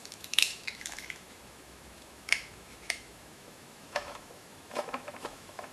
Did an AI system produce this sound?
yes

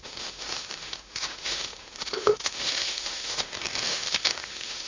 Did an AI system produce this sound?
yes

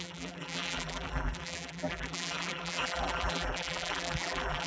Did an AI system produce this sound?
yes